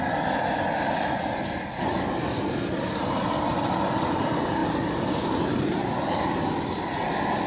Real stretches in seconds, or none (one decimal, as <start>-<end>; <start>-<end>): 0.0-4.6; 6.2-7.5